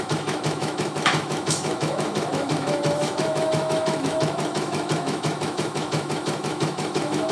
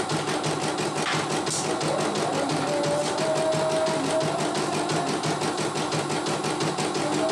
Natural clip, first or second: second